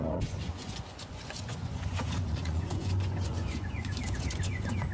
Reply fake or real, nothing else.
fake